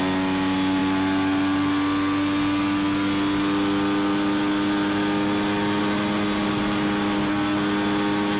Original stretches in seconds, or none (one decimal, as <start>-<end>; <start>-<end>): 0.0-8.4